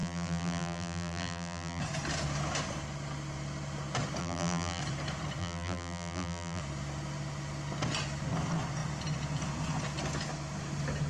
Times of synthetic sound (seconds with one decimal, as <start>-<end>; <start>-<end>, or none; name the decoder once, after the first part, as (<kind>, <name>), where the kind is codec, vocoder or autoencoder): 0.0-1.8 (vocoder, BigVGAN v2); 4.2-4.8; 5.4-6.6